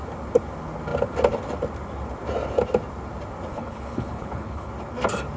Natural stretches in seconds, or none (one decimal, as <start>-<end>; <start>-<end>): 0.0-3.5; 4.7-5.4